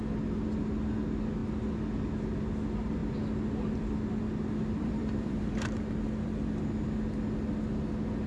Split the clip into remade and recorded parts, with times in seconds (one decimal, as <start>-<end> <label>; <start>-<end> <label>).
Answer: 0.0-4.8 recorded; 4.8-5.5 remade; 5.5-8.3 recorded